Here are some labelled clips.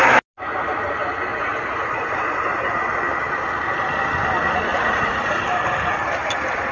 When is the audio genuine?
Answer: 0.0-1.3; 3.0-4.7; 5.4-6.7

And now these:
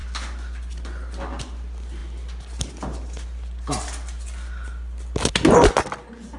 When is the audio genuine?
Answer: 0.0-6.4

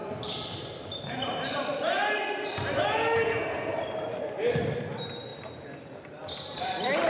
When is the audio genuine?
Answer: none

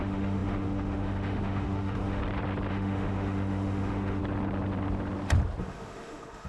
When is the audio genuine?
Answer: 2.2-2.7; 4.2-5.6

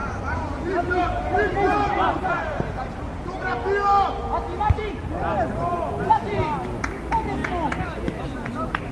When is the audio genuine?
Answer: 2.6-4.5; 6.1-8.9

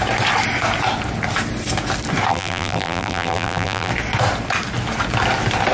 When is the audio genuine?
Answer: 0.0-2.3; 3.9-5.7

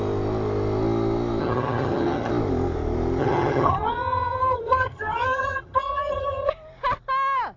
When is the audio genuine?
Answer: 0.0-1.4; 2.3-3.2; 6.5-7.6

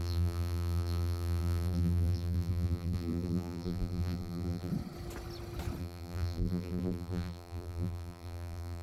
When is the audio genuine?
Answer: 4.7-5.8